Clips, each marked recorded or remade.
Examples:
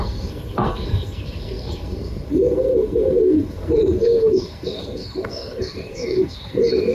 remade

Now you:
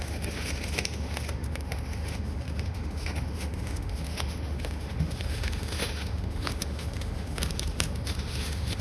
remade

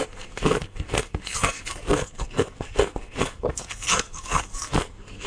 remade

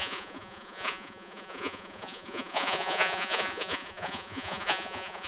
remade